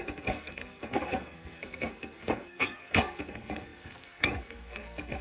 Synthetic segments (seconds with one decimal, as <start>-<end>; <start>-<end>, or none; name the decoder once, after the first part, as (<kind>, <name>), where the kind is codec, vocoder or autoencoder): 0.0-5.2 (codec, SNAC)